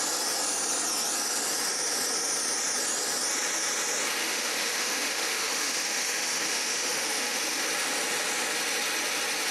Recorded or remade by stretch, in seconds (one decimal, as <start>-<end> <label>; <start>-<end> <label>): 0.0-4.2 recorded; 4.2-7.4 remade; 7.4-9.5 recorded